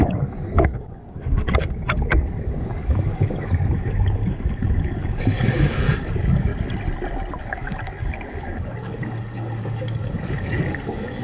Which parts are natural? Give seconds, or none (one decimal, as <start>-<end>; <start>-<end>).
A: 6.5-7.4